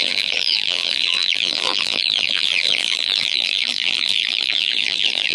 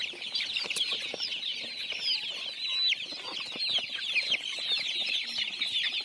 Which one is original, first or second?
second